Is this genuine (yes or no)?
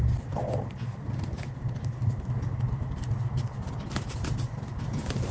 yes